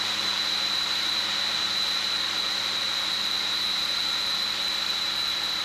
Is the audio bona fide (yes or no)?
no